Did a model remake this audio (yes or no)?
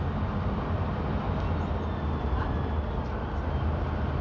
no